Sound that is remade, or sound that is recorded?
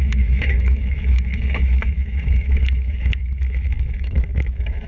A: remade